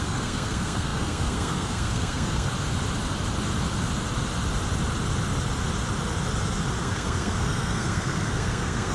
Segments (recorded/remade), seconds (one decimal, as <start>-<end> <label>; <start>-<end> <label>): 0.0-2.5 remade; 2.5-6.8 recorded; 6.8-8.9 remade